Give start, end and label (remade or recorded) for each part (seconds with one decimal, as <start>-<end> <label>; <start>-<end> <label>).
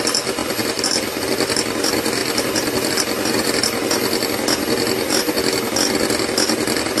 0.0-7.0 recorded